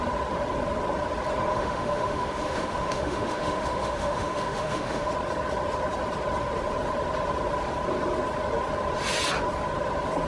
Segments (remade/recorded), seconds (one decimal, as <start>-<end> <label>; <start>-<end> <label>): 0.0-1.5 recorded; 1.5-5.1 remade; 5.1-10.3 recorded